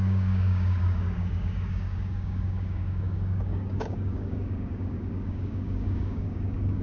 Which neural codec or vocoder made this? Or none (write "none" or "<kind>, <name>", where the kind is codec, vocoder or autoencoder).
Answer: codec, DAC